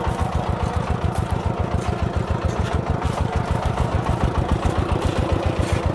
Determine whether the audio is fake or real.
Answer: real